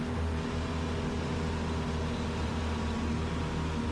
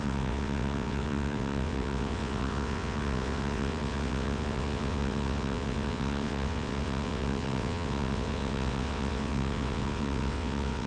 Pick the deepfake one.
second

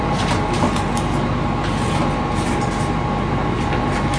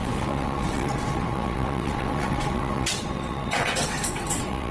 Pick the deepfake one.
second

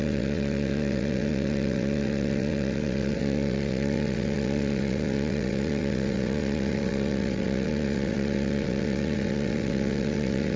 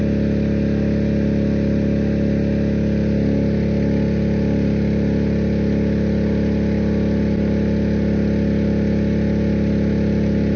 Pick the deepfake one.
first